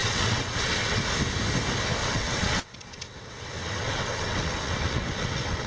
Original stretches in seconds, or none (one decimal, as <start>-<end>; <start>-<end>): 1.0-2.0